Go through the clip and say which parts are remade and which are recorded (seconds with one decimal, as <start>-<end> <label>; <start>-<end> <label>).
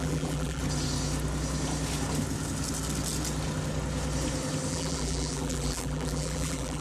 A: 0.0-0.6 remade; 0.6-4.7 recorded; 4.7-6.8 remade